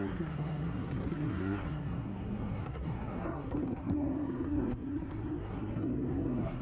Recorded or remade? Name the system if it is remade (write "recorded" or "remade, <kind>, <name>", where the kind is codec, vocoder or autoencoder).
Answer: remade, codec, SNAC